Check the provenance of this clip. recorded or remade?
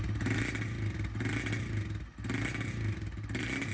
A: recorded